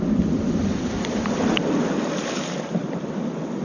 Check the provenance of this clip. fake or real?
real